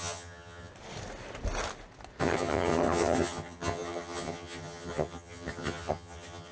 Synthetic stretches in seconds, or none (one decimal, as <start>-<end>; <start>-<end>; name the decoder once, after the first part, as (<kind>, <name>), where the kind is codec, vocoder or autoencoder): 0.0-0.7 (vocoder, HiFi-GAN); 2.2-6.5